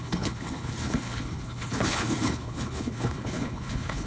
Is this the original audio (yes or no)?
no